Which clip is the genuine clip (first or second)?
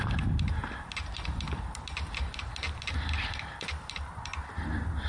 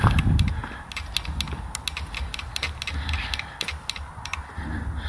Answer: second